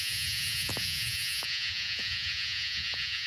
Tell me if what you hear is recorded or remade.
remade